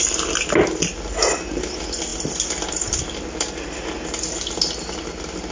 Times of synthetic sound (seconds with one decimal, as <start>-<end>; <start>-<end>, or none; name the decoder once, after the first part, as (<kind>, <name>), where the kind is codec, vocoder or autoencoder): none